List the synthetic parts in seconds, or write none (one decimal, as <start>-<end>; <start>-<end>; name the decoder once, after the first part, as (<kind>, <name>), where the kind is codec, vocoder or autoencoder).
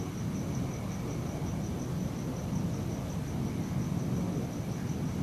none